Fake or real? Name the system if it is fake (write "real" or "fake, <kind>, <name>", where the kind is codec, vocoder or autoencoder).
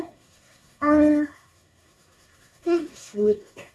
fake, codec, SNAC